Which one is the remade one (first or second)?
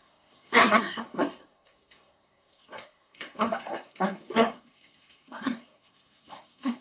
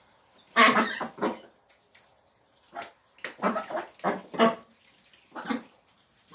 first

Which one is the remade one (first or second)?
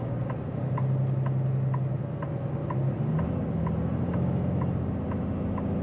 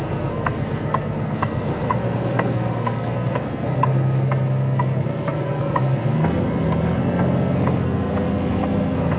second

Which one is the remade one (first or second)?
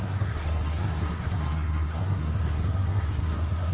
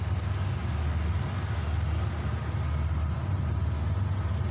first